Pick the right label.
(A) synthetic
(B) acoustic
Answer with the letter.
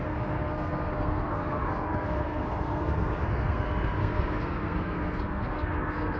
A